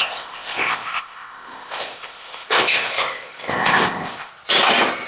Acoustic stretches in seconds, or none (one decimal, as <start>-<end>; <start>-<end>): 4.3-5.1